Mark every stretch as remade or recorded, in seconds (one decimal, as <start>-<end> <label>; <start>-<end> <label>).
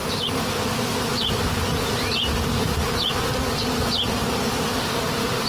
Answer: 0.0-5.5 recorded